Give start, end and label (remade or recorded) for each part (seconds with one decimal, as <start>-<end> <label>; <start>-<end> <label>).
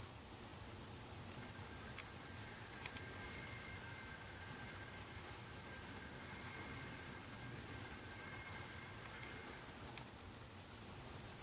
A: 0.0-2.0 remade; 2.0-3.0 recorded; 3.0-3.9 remade; 3.9-5.9 recorded; 5.9-9.4 remade; 9.4-10.9 recorded; 10.9-11.4 remade